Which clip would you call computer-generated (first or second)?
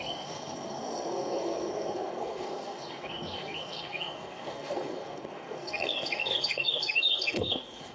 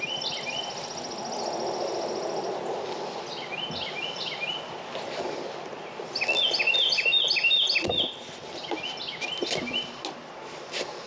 first